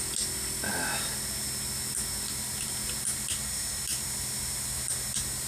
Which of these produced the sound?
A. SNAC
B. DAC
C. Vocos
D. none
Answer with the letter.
D